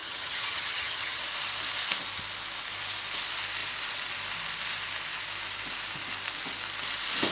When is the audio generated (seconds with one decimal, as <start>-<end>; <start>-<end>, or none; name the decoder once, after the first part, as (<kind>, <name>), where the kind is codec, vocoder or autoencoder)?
0.0-1.2 (vocoder, HiFi-GAN)